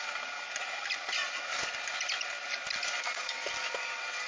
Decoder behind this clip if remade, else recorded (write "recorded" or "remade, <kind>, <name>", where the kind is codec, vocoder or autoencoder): recorded